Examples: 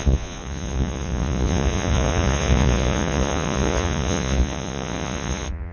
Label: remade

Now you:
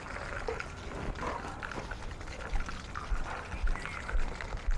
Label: recorded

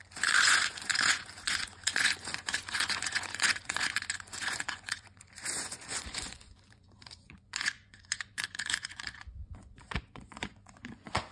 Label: remade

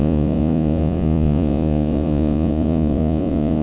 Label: remade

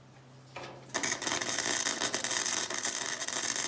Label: recorded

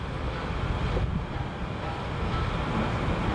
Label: recorded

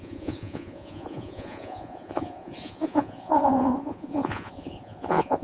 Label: remade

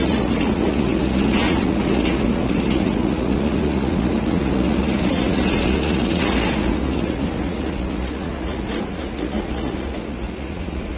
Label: remade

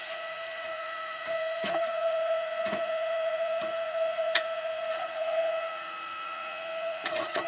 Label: remade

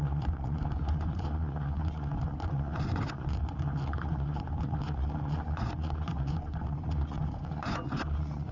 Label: remade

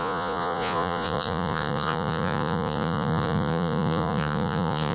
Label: remade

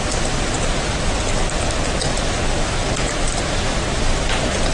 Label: recorded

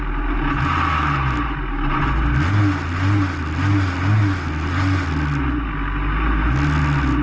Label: recorded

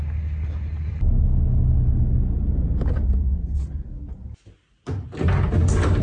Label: recorded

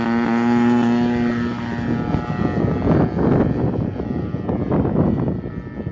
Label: recorded